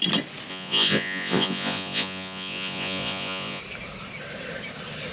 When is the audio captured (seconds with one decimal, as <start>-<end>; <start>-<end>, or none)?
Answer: 0.0-0.5; 3.6-5.1